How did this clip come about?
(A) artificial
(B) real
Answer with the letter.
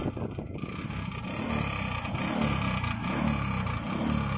B